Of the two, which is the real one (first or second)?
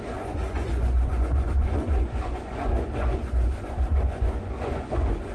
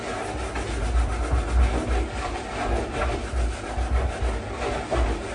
second